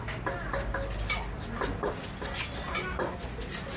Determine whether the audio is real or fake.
real